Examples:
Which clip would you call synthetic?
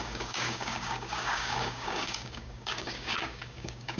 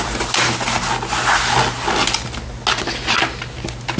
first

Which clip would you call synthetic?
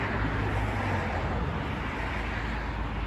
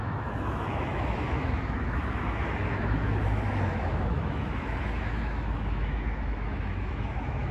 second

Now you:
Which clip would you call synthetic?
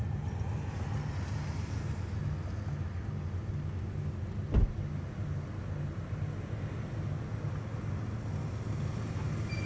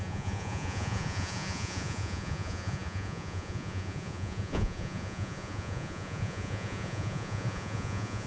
second